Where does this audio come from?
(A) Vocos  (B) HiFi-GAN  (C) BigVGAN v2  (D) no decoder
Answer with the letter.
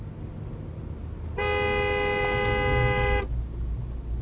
D